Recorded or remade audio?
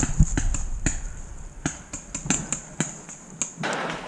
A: recorded